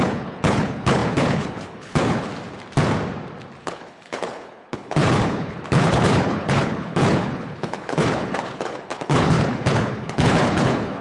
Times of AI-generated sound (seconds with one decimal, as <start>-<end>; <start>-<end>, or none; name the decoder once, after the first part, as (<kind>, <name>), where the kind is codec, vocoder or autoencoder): 0.0-2.3 (codec, HILCodec); 3.6-11.0